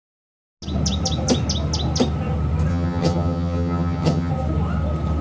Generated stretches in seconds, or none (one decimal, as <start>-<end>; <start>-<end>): 2.7-4.3